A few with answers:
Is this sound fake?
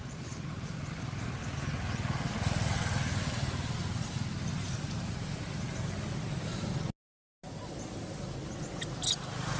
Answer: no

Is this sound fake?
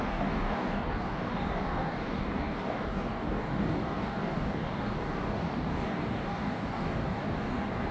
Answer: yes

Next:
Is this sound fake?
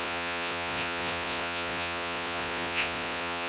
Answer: yes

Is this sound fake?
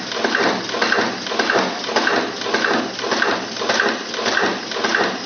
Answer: no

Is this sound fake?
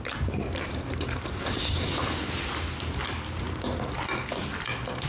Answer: no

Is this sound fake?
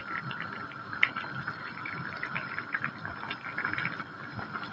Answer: no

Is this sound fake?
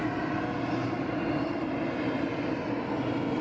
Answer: no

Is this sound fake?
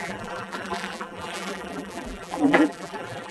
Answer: yes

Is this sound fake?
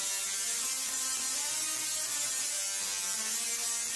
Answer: no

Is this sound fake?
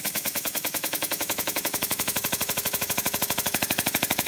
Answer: yes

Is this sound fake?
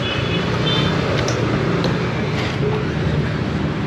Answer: no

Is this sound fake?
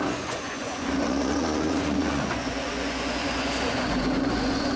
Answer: yes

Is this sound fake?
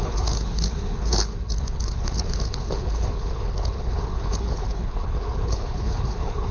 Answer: yes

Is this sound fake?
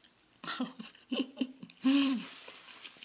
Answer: no